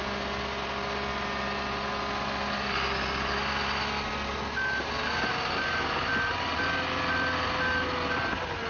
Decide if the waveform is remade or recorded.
recorded